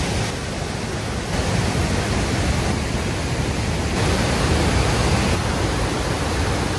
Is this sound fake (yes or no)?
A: no